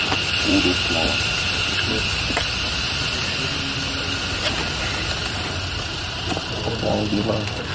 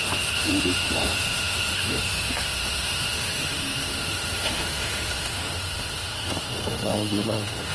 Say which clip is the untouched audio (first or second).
first